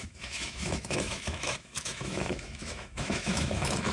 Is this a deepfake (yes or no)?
yes